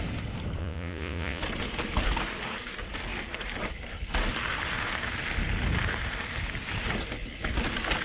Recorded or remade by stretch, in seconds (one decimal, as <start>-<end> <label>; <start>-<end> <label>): 0.0-0.6 recorded; 0.6-1.4 remade; 1.4-8.0 recorded